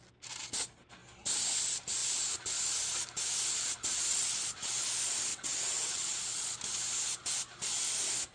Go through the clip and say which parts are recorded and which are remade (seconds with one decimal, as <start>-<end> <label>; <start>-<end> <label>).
0.0-4.1 recorded; 4.1-4.7 remade; 4.7-5.3 recorded; 5.3-6.6 remade; 6.6-8.3 recorded